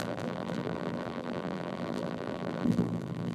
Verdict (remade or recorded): remade